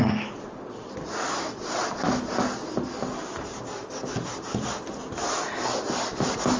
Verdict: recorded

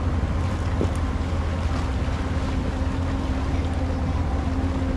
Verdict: recorded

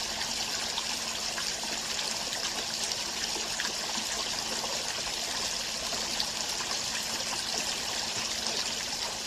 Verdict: recorded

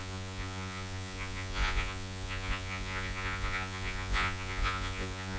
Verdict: remade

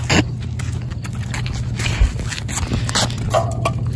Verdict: recorded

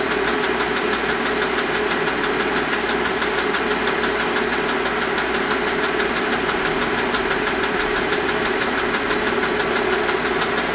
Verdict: recorded